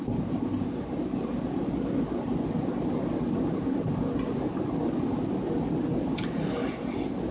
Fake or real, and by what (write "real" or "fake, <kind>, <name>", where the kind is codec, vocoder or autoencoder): real